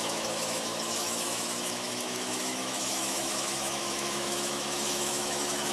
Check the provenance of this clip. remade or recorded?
remade